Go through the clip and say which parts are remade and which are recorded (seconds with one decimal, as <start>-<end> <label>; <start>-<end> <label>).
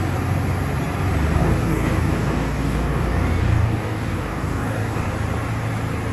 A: 0.0-1.4 recorded; 1.4-5.1 remade; 5.1-6.1 recorded